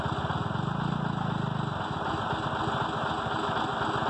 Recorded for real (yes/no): yes